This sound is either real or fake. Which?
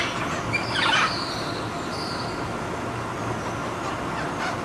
real